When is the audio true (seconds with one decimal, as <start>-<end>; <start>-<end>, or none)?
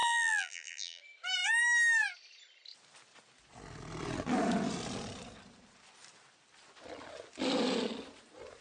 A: 1.0-8.6